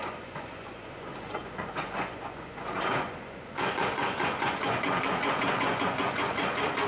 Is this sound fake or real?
fake